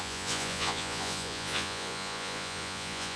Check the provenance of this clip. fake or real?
fake